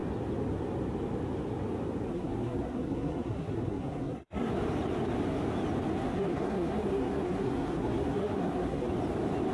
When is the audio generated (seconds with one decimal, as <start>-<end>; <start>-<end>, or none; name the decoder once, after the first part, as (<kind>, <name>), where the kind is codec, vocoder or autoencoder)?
2.1-4.5 (codec, SNAC); 6.0-8.9